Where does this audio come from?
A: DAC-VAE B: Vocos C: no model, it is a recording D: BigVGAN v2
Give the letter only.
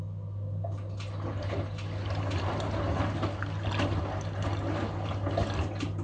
C